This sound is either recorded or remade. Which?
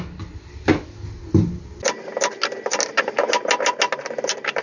recorded